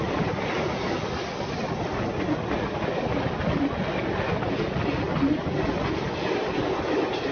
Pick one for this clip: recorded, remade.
recorded